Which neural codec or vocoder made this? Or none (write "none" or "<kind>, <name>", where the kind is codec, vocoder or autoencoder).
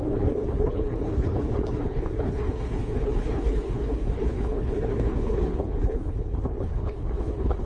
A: codec, HILCodec